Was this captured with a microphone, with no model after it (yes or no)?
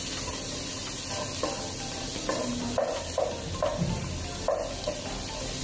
yes